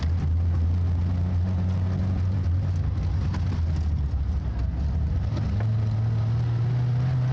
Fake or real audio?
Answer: real